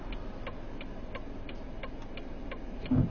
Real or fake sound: real